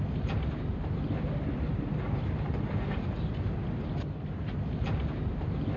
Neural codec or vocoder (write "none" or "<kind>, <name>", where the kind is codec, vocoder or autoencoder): none